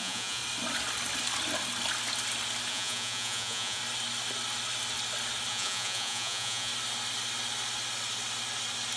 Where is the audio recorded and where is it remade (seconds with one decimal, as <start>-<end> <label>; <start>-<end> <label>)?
0.0-0.4 remade; 0.4-2.7 recorded; 2.7-3.8 remade; 3.8-5.5 recorded; 5.5-6.7 remade; 6.7-9.0 recorded